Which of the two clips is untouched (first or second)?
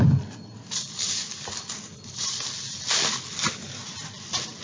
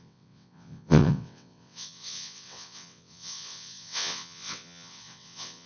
first